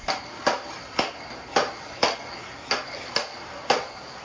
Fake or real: real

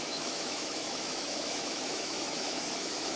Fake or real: fake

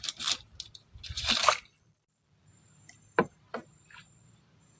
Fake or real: real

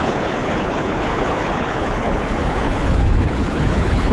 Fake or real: fake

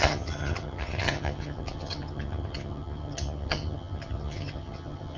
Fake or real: fake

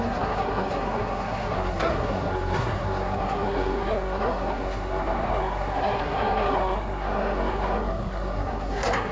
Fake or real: fake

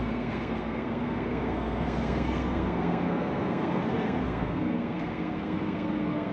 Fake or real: fake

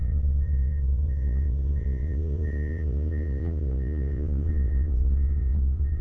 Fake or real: fake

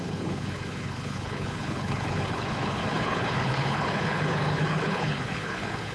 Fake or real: fake